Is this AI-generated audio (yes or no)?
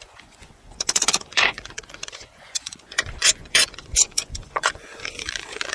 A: yes